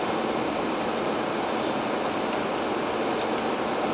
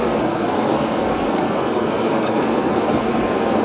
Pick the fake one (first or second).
second